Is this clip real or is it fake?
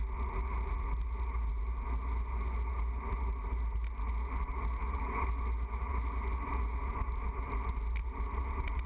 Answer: real